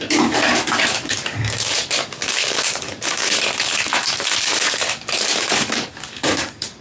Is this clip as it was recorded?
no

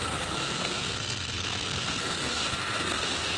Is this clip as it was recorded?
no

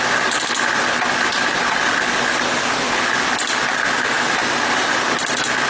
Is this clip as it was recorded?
yes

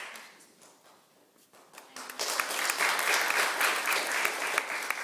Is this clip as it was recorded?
yes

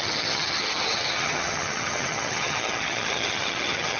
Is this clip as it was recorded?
no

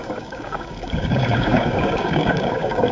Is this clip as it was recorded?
no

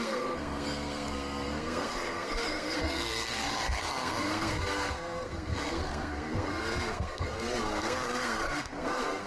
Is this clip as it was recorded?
no